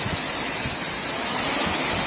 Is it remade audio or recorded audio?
recorded